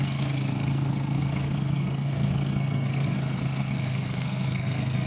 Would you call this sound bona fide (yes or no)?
no